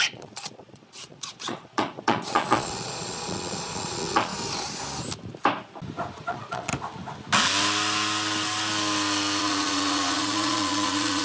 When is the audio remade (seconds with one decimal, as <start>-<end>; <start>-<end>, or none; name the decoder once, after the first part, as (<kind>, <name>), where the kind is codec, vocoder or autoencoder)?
0.0-4.3 (vocoder, Vocos); 6.3-6.7; 9.4-11.2